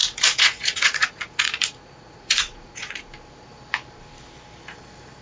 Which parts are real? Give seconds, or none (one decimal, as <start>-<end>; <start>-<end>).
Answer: 3.1-5.2